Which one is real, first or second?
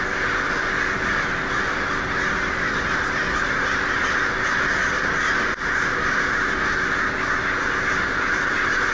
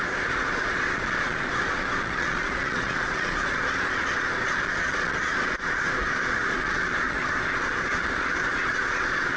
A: first